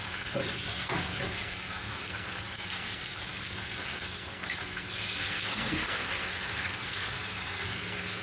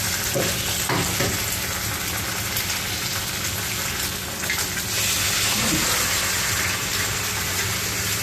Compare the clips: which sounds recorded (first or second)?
second